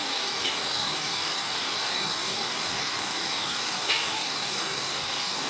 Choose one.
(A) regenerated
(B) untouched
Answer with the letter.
A